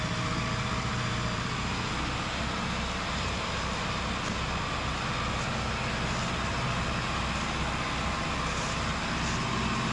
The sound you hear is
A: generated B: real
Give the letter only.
B